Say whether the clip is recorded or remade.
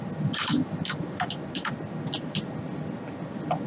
recorded